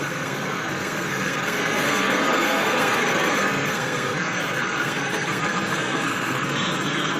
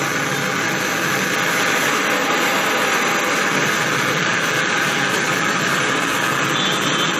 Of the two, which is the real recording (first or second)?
second